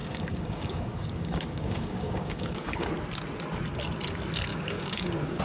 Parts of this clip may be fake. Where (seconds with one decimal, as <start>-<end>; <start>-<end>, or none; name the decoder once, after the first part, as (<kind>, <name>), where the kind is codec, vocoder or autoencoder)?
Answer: 0.0-2.9 (codec, DAC); 4.5-5.4